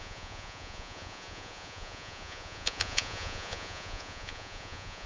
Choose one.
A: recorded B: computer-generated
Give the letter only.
B